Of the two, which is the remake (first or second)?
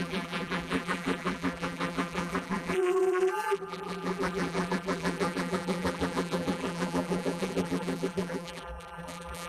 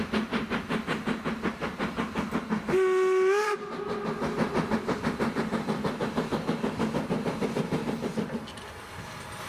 first